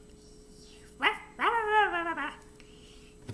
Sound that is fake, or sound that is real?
real